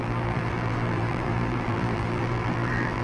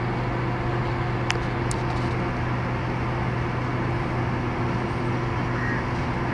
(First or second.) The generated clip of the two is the first